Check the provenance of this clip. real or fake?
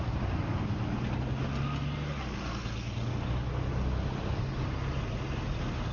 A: real